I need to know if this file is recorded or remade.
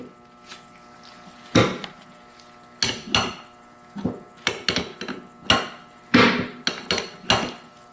recorded